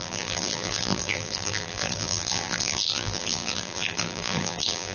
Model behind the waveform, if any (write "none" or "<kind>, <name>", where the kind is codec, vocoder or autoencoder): vocoder, BigVGAN v2